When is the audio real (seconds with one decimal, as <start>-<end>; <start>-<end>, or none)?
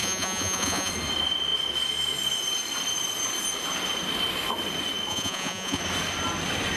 0.9-5.1; 5.8-6.8